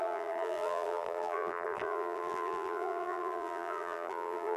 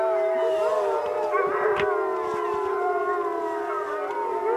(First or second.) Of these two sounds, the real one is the second